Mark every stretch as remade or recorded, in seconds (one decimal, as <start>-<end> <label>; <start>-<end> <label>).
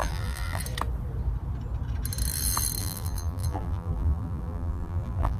0.0-0.6 remade; 0.6-2.8 recorded; 2.8-5.4 remade